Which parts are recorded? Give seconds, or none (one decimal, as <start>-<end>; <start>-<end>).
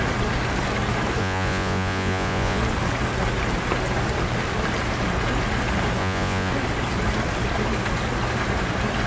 0.0-1.2; 2.6-6.0; 6.5-9.1